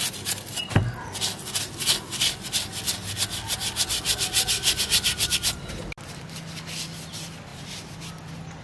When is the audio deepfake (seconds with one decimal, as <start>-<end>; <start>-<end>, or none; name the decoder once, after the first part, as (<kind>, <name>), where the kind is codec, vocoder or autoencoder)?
none